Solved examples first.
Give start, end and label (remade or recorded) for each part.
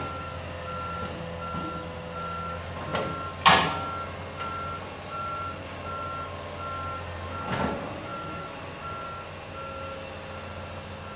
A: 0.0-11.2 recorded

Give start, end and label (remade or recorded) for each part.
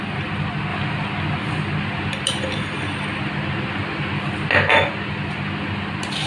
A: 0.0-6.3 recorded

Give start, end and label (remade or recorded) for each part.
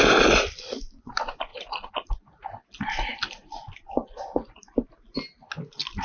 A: 0.0-6.0 recorded